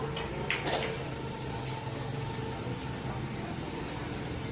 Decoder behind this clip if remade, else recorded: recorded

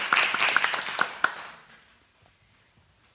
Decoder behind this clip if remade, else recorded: recorded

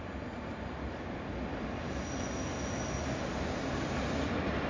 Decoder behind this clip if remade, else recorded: recorded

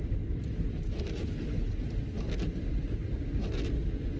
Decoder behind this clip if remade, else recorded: recorded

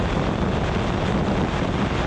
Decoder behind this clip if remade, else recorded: recorded